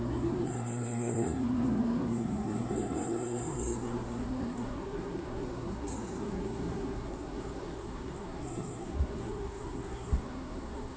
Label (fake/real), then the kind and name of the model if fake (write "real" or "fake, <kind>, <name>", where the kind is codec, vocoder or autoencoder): fake, codec, SNAC